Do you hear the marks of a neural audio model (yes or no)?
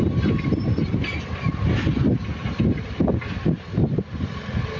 no